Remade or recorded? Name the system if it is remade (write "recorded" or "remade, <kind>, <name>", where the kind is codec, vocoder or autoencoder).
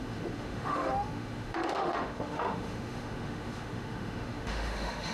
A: remade, autoencoder, DAC-VAE